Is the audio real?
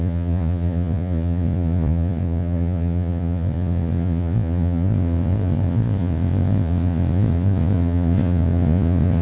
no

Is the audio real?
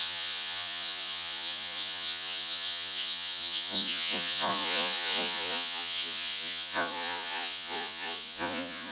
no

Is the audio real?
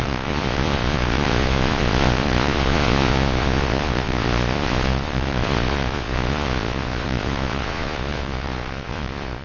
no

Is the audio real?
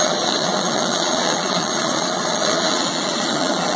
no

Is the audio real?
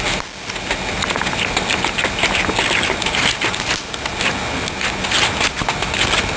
yes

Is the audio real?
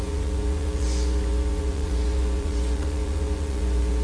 no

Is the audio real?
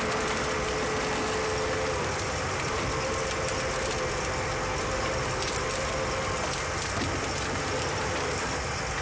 yes